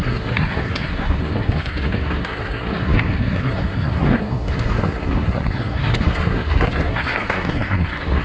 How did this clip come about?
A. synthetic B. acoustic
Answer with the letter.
A